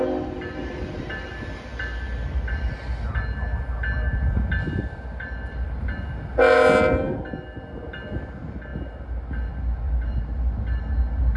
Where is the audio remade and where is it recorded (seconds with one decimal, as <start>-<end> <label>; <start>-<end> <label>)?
0.0-11.4 recorded

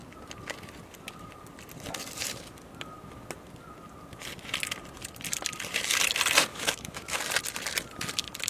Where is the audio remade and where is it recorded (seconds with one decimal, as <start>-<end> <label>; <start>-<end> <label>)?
0.0-6.5 recorded; 6.5-7.2 remade; 7.2-8.5 recorded

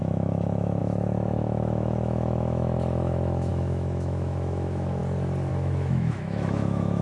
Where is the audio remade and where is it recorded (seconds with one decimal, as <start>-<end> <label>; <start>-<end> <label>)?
0.0-5.0 remade; 5.0-5.5 recorded; 5.5-7.0 remade

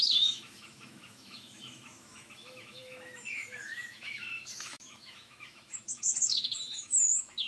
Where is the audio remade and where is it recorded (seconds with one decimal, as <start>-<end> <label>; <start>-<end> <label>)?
0.0-7.5 remade

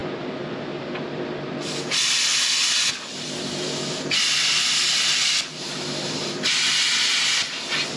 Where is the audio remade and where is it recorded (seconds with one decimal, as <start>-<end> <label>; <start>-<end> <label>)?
0.0-8.0 recorded

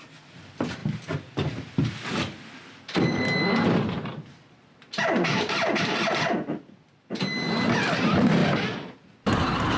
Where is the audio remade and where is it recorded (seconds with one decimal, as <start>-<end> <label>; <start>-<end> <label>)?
0.0-9.8 recorded

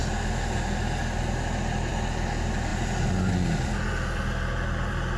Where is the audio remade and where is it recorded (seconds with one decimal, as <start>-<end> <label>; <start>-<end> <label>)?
0.0-5.2 recorded